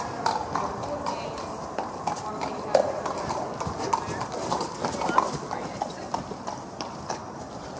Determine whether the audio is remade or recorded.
recorded